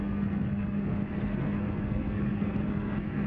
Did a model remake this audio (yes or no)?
yes